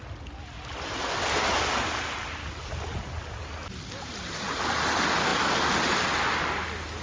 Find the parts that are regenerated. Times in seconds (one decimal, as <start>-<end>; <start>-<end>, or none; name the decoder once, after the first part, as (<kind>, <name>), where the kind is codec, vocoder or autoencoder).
none